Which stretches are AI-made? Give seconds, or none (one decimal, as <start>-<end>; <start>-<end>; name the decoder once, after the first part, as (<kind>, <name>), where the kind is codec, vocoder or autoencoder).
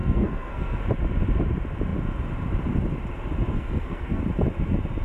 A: 0.0-0.8 (codec, SNAC); 3.5-4.2